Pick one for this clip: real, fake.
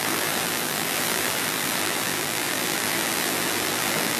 fake